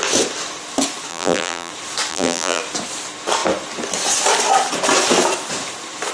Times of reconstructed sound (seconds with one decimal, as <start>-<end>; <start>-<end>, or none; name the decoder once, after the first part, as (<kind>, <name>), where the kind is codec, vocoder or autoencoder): 1.1-1.7 (vocoder, BigVGAN v2); 2.1-2.6